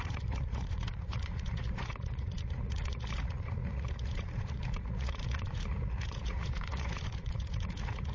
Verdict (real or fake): fake